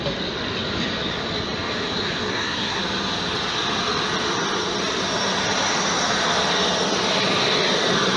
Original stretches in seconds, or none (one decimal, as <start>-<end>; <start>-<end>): 0.0-2.3; 2.8-8.2